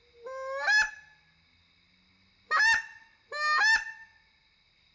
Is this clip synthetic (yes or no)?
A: no